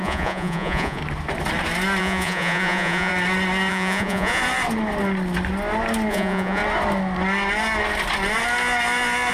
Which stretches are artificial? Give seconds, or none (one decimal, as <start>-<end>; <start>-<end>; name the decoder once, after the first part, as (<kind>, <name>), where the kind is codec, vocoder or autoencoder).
0.0-1.0 (vocoder, Vocos); 2.0-3.1; 3.7-4.4; 6.1-6.6